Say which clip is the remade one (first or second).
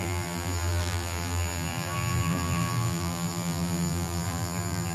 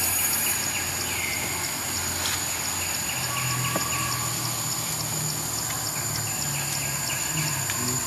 first